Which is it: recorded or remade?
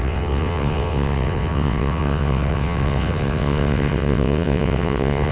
remade